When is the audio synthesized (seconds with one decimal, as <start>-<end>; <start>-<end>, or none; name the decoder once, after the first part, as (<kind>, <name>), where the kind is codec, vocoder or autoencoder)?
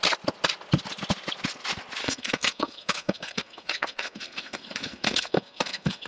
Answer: 2.0-6.1 (codec, SNAC)